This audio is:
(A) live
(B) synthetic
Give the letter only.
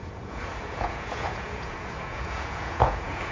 B